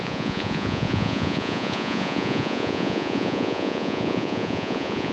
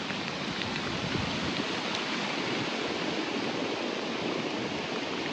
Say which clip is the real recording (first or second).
second